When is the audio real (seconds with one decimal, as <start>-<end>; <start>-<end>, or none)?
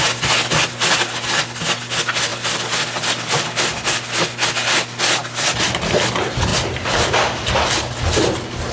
0.0-6.5; 7.5-8.7